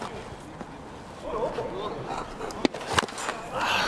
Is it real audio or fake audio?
real